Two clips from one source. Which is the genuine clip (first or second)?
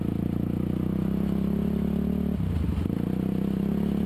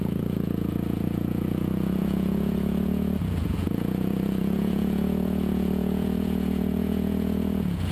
first